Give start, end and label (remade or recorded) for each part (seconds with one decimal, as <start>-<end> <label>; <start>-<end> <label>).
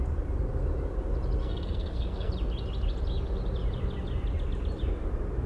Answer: 0.0-1.4 recorded; 1.4-2.3 remade; 2.3-5.5 recorded